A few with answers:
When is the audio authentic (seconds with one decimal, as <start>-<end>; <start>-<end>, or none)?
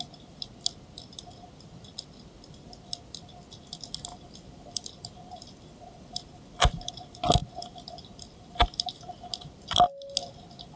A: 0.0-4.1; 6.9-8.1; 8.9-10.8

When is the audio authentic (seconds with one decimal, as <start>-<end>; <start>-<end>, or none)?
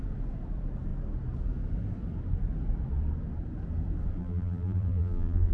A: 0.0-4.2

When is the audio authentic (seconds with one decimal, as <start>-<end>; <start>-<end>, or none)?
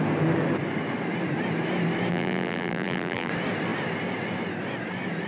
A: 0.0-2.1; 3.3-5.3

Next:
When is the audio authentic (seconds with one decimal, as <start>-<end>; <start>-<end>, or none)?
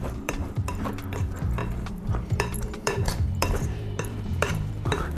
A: 0.9-1.6; 4.7-5.2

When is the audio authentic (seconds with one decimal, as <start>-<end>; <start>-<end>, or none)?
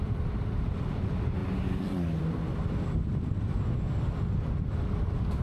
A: 0.0-1.4; 3.4-5.4